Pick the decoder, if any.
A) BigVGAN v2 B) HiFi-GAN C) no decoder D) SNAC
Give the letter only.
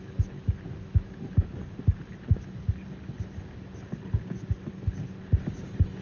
C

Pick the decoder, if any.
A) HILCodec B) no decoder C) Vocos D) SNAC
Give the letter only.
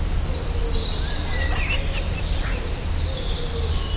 B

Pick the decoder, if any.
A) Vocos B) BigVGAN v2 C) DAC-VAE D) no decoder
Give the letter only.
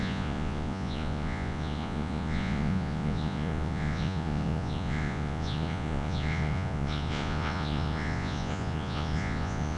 A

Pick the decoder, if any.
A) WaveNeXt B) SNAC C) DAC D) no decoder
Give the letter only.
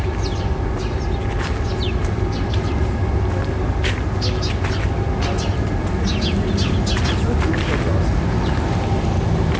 D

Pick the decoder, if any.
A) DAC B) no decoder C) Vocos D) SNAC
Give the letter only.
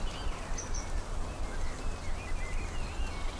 B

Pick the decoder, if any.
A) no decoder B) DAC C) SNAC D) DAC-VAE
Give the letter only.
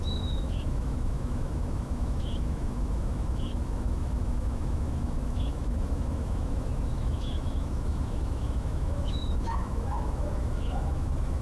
D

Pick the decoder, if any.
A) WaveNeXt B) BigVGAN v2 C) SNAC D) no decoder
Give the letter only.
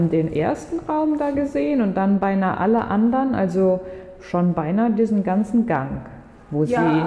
D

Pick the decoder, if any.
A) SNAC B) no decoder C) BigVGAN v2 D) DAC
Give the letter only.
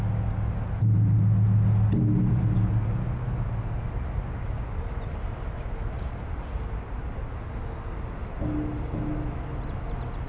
B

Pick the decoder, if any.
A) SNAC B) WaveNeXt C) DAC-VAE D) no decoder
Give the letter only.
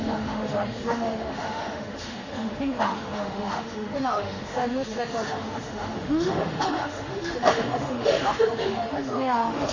C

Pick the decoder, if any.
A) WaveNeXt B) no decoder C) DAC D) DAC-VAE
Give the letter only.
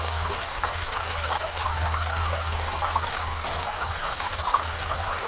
C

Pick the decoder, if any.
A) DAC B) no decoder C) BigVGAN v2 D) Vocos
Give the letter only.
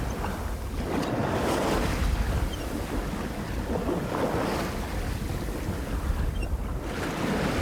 B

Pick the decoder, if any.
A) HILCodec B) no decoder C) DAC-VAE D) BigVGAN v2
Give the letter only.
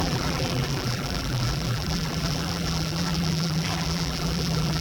D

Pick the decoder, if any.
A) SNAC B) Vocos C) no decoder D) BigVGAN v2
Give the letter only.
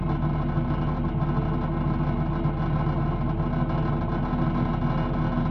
C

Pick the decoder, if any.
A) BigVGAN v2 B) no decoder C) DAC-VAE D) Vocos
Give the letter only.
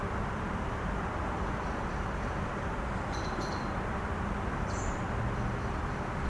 A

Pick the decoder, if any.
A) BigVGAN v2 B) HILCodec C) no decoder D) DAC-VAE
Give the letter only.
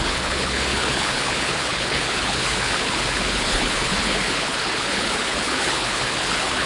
B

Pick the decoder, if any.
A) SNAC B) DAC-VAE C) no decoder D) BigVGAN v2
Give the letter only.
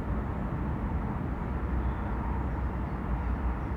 C